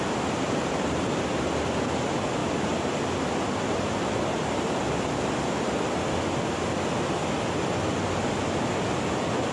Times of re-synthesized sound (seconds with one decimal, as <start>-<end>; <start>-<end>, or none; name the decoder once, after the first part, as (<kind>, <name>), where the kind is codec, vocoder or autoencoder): none